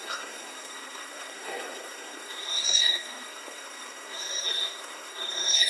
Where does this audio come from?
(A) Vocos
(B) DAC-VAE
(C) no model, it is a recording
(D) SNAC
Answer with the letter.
D